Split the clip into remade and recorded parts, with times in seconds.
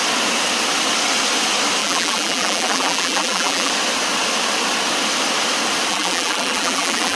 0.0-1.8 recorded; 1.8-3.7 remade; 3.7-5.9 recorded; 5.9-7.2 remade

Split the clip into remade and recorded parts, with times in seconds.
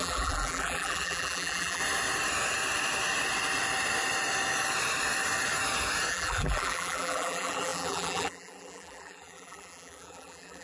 0.0-1.8 remade; 1.8-6.1 recorded; 6.1-10.6 remade